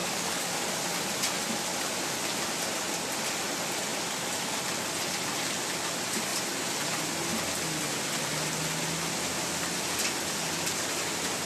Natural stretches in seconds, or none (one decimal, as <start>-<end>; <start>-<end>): 0.7-11.5